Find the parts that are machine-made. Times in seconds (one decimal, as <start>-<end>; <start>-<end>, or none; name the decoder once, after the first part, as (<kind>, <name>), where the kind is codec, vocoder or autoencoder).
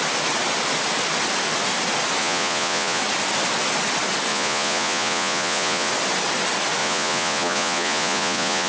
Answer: 2.2-3.0 (vocoder, Vocos); 4.3-5.9; 6.8-8.7